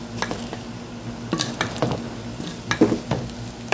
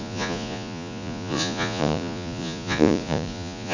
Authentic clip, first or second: first